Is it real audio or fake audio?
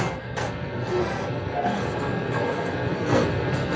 fake